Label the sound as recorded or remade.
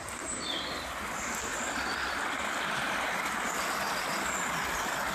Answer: recorded